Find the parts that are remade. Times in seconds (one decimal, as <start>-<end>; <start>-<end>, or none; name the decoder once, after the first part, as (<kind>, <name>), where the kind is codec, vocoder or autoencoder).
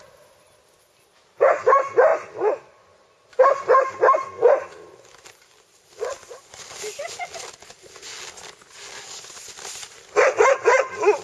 none